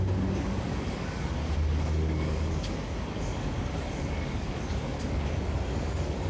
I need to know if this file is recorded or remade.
remade